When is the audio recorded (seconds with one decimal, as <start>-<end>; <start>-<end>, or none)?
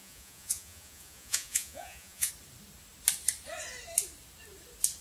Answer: 2.3-5.0